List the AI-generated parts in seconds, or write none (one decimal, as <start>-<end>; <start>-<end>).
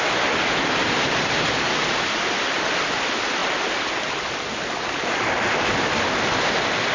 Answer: none